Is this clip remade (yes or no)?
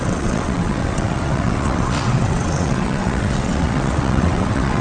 yes